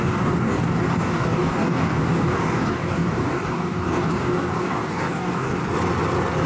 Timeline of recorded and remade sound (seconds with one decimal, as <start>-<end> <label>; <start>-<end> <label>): 0.0-5.6 remade; 5.6-6.5 recorded